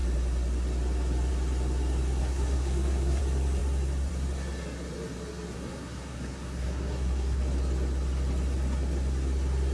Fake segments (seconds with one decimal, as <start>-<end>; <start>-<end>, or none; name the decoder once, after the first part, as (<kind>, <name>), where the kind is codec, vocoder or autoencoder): 2.2-3.2 (codec, SNAC); 5.5-7.4